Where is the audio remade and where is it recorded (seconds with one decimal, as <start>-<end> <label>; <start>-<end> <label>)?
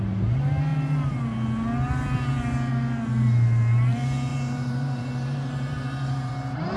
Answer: 0.0-4.3 recorded; 4.3-6.3 remade; 6.3-6.8 recorded